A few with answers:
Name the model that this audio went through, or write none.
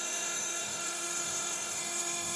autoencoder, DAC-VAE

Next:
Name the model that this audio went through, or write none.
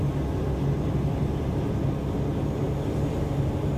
none